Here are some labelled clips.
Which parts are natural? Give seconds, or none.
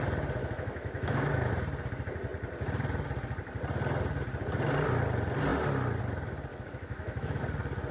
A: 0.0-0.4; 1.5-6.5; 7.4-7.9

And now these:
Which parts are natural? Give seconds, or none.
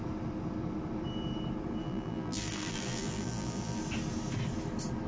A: 0.0-1.8; 3.8-5.1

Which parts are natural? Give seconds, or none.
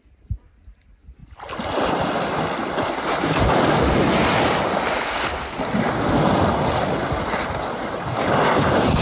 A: none